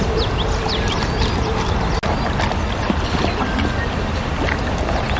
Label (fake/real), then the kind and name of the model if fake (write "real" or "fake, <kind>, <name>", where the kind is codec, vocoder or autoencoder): real